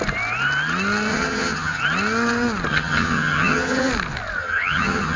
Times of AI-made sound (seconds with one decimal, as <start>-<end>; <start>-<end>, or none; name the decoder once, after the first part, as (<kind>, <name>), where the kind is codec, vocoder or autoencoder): 1.1-1.8 (vocoder, HiFi-GAN); 2.7-3.9; 4.4-5.2